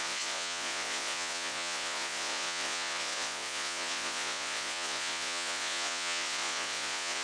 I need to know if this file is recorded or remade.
remade